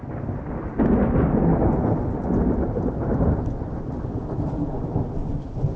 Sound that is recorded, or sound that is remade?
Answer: recorded